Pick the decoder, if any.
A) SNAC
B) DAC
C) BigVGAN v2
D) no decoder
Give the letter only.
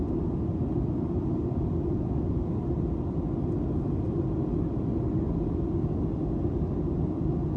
D